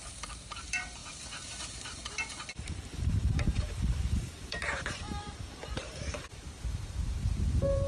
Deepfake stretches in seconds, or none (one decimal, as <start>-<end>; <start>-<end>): 0.0-7.9